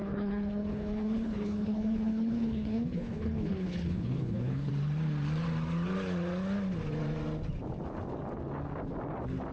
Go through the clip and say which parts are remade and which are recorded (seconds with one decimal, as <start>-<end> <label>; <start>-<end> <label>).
0.0-4.7 remade; 4.7-9.5 recorded